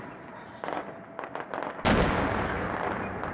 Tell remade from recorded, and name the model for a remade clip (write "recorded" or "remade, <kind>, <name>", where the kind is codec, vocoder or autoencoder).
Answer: recorded